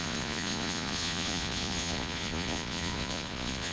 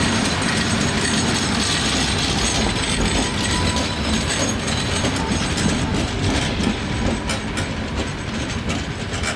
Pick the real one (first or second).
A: second